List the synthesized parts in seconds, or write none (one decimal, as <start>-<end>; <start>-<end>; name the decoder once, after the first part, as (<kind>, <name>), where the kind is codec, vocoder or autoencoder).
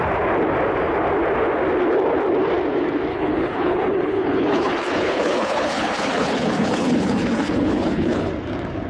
3.1-8.3 (codec, HILCodec)